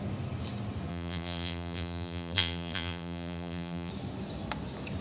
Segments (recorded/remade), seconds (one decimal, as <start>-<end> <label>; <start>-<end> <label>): 0.0-0.9 recorded; 0.9-3.9 remade; 3.9-5.0 recorded